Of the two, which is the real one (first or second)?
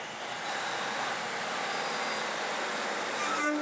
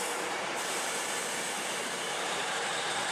first